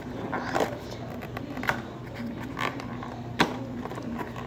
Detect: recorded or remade recorded